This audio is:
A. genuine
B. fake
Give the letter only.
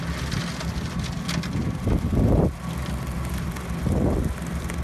A